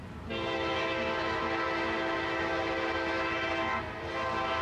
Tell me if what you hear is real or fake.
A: real